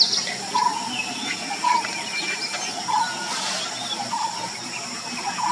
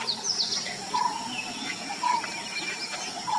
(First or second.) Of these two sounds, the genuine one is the first